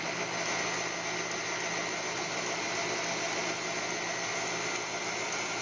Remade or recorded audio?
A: recorded